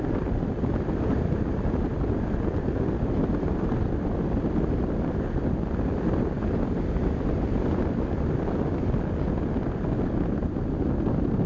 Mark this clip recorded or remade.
recorded